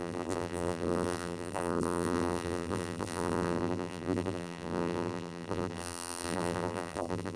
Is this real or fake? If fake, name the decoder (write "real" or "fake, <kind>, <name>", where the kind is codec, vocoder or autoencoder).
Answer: fake, vocoder, BigVGAN v2